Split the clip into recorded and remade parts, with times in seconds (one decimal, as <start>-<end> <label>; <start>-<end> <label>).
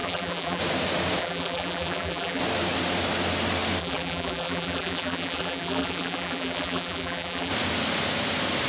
0.0-0.6 remade; 0.6-1.2 recorded; 1.2-2.4 remade; 2.4-3.8 recorded; 3.8-7.5 remade; 7.5-8.7 recorded